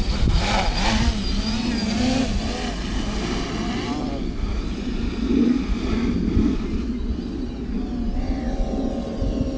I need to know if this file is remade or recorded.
recorded